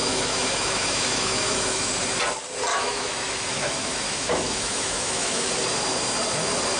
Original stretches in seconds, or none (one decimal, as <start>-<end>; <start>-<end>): 1.9-2.7; 5.5-6.8